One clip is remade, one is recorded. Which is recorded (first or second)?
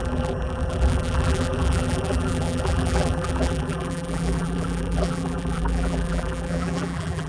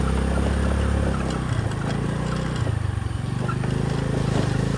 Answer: second